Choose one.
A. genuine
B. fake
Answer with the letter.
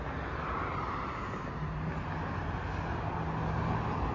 A